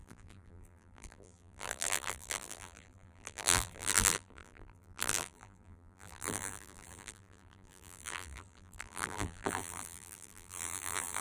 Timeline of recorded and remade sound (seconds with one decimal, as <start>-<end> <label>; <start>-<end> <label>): 0.0-11.2 remade

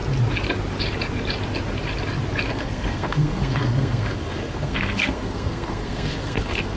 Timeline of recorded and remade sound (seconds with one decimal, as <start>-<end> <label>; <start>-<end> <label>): 0.0-2.5 recorded; 2.5-6.8 remade

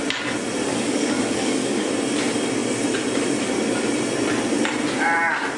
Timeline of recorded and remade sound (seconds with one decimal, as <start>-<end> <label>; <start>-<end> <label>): 0.0-0.7 recorded; 0.7-1.9 remade; 1.9-5.6 recorded

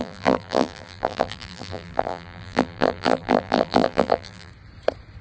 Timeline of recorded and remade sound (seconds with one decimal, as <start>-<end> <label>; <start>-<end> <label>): 0.0-4.5 remade; 4.5-5.2 recorded